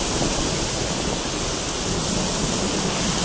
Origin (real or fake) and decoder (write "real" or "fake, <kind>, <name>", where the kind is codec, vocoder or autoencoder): real